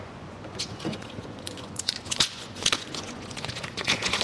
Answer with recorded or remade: remade